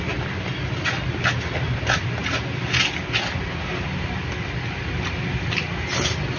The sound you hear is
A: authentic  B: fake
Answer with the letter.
A